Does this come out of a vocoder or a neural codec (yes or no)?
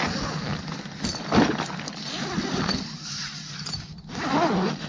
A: no